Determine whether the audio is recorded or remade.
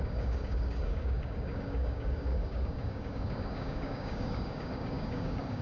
remade